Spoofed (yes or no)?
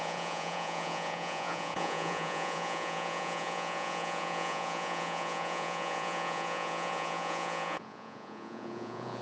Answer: yes